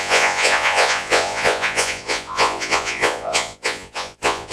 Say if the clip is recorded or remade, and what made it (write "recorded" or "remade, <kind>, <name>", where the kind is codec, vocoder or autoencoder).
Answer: remade, vocoder, Vocos